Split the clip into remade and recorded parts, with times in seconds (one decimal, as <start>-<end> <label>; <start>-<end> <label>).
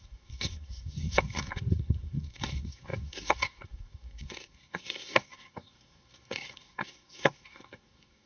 0.0-8.3 remade